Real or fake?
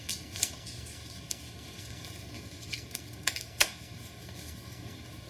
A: fake